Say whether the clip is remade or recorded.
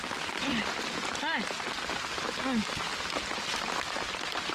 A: recorded